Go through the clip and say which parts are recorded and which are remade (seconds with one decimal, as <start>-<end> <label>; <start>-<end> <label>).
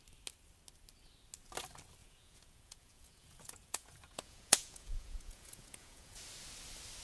0.0-2.0 recorded; 2.0-6.2 remade; 6.2-7.0 recorded